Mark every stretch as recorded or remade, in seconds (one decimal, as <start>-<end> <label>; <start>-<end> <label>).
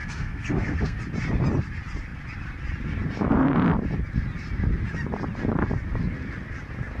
0.0-1.0 remade; 1.0-7.0 recorded